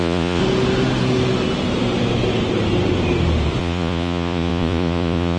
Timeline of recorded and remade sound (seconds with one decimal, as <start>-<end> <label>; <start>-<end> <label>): 0.0-0.4 remade; 0.4-3.6 recorded; 3.6-5.4 remade